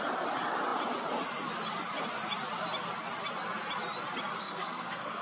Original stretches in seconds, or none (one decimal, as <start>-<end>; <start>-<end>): 0.0-4.4